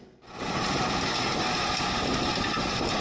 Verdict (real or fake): real